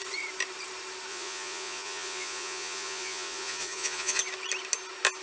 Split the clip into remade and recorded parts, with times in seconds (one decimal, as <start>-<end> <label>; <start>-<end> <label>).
0.0-1.1 recorded; 1.1-4.2 remade; 4.2-5.2 recorded